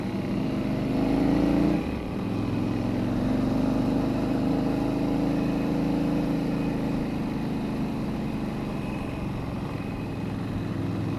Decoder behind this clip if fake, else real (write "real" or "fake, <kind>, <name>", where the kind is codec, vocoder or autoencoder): real